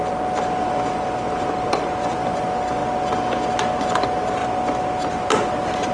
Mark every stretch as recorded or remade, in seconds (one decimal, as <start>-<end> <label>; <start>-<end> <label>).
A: 0.0-5.9 recorded